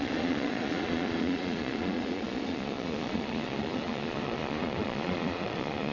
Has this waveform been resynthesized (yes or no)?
yes